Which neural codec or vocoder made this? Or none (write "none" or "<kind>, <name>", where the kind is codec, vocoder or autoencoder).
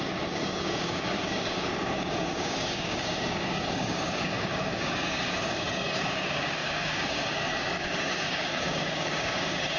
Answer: codec, DAC